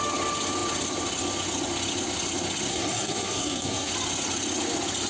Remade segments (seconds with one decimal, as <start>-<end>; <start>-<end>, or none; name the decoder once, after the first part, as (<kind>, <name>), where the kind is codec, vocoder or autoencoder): 2.7-3.9 (codec, SNAC)